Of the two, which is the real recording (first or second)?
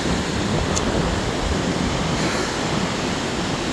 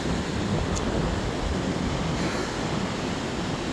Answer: second